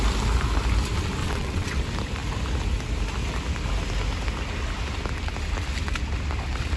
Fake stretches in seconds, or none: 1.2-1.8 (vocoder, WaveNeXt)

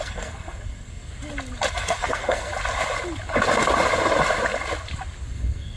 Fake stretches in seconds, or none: 0.0-1.1 (codec, SNAC); 1.7-2.5; 5.3-5.8

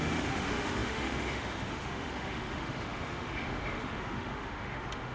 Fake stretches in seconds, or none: 0.0-5.1 (autoencoder, DAC-VAE)

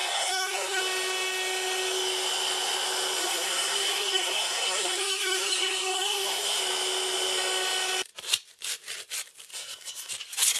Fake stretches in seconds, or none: 0.0-0.8 (codec, SNAC); 3.2-6.6; 9.5-10.1

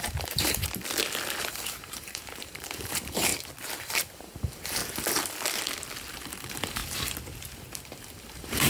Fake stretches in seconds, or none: 0.0-0.6 (vocoder, BigVGAN v2); 1.5-3.3; 3.8-4.8; 6.1-6.8; 8.0-8.7

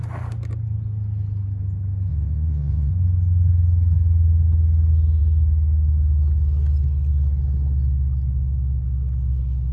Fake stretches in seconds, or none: 2.1-2.9 (vocoder, Vocos)